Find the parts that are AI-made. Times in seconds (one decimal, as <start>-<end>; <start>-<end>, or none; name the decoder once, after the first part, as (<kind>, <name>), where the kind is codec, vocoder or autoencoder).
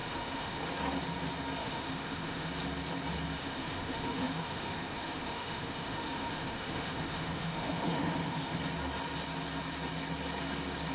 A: 0.0-0.6 (autoencoder, DAC-VAE); 1.6-2.5; 3.4-8.6